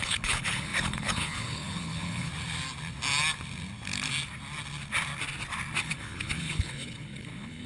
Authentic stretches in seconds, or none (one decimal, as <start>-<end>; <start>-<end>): 2.3-5.8